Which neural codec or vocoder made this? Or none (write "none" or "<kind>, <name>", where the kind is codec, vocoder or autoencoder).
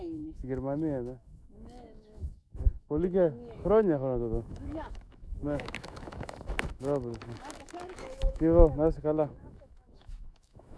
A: autoencoder, DAC-VAE